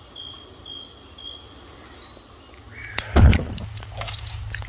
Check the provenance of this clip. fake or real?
real